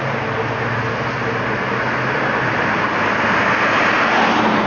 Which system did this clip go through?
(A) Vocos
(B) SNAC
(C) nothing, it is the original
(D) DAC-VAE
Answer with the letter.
C